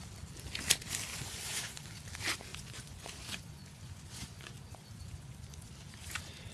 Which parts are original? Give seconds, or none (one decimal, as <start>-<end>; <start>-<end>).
0.0-1.1; 2.0-2.5; 5.7-6.5